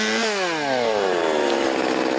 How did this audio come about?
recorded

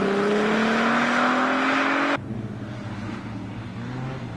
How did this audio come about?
recorded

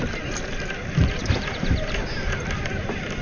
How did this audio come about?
recorded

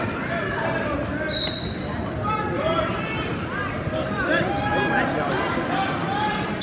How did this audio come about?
recorded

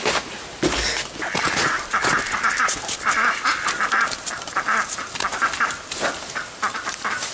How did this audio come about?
recorded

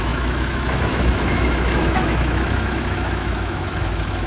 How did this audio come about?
remade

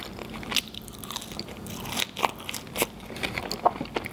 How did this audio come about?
recorded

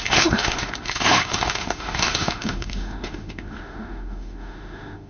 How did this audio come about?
remade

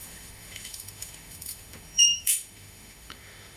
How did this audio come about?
remade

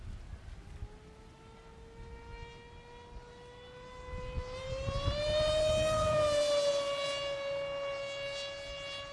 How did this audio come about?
recorded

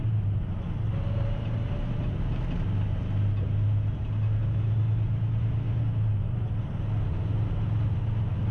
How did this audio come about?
recorded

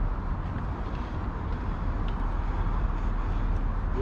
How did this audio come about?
recorded